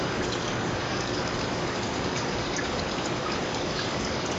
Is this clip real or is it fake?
fake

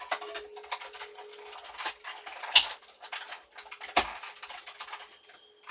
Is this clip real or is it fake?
real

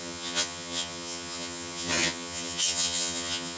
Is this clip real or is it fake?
fake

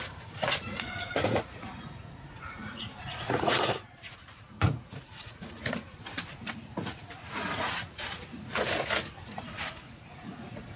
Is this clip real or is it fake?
fake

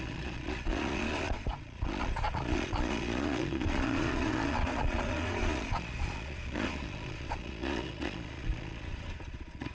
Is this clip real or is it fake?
fake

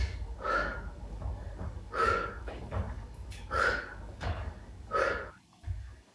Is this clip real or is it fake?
fake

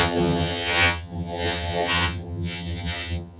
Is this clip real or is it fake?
fake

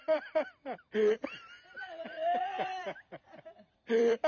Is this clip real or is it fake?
fake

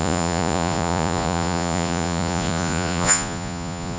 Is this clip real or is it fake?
fake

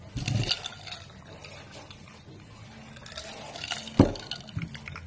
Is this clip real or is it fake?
real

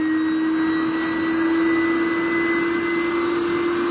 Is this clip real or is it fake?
real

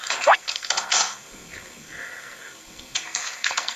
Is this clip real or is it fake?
fake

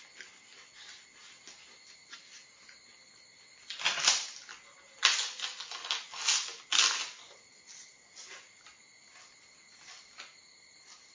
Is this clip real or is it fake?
real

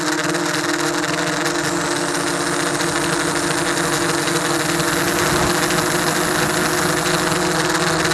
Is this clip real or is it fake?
real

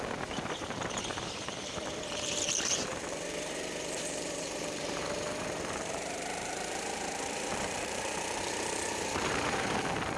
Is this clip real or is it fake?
fake